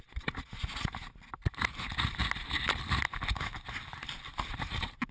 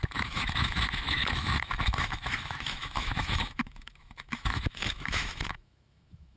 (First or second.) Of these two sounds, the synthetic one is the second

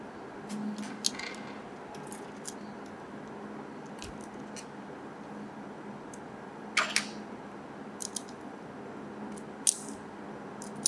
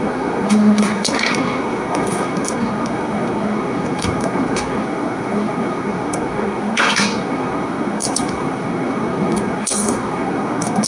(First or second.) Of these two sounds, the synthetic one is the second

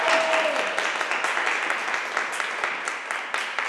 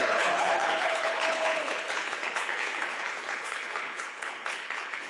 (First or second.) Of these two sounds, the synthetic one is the second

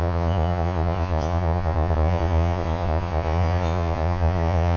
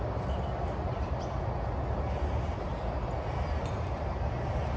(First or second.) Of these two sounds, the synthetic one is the first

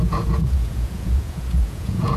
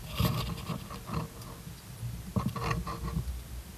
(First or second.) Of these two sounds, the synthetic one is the first